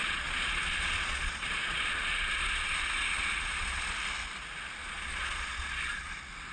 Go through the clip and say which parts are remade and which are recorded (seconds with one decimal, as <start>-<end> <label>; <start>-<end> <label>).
0.0-3.9 remade; 3.9-4.8 recorded; 4.8-6.1 remade; 6.1-6.5 recorded